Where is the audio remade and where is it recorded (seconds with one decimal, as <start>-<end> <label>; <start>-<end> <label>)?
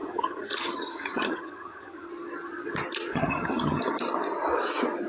0.0-2.1 remade; 2.1-3.1 recorded; 3.1-3.8 remade; 3.8-5.1 recorded